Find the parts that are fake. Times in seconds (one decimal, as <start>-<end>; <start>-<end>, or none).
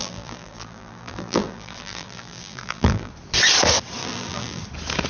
0.0-3.1; 4.0-4.6